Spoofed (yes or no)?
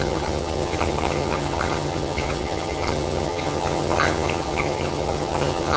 yes